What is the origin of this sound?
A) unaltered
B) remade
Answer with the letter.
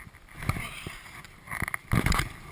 A